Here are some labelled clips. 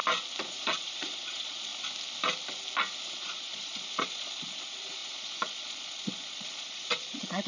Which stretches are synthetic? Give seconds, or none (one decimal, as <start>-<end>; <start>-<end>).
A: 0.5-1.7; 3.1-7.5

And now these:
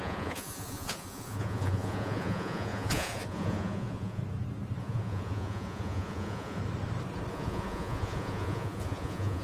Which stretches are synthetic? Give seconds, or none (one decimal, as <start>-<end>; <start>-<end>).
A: 0.0-4.2; 4.8-6.6; 7.3-9.4

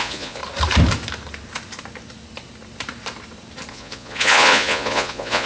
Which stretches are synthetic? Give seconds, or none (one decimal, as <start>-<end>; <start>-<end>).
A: 0.0-0.4; 3.7-5.5

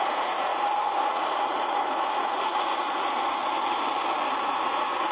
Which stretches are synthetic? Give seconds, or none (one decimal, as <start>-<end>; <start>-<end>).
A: 0.0-3.4; 4.4-5.1

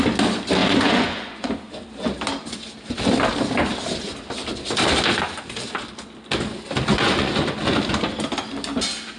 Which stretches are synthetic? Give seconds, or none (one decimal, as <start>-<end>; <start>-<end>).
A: 0.6-1.5; 6.9-7.6

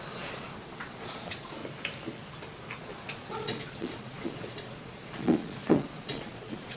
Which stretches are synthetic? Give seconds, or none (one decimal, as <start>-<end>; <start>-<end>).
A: 0.0-1.6; 2.8-6.8

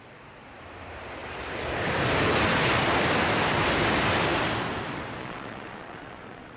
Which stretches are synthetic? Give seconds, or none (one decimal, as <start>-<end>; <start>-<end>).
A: 5.2-6.6